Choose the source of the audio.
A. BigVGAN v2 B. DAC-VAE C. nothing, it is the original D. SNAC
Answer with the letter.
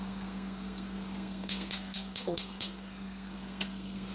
D